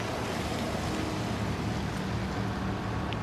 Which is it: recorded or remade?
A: recorded